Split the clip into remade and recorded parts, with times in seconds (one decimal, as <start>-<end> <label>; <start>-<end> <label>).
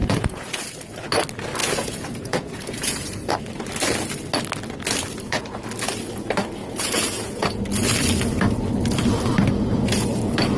0.0-0.7 remade; 0.7-1.6 recorded; 1.6-3.3 remade; 3.3-6.6 recorded; 6.6-7.6 remade; 7.6-9.7 recorded; 9.7-10.2 remade; 10.2-10.6 recorded